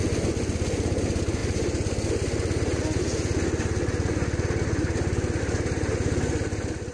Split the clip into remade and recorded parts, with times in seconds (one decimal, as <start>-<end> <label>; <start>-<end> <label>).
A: 0.0-6.9 recorded